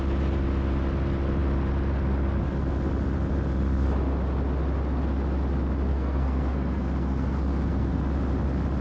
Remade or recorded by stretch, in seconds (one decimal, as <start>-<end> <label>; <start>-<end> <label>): 0.0-5.9 recorded; 5.9-8.0 remade; 8.0-8.8 recorded